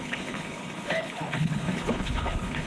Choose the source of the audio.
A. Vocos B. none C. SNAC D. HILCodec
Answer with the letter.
D